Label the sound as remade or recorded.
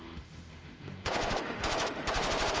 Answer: remade